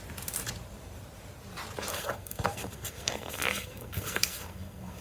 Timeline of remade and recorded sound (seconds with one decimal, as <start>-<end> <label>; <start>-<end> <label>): 0.0-1.9 recorded; 1.9-5.0 remade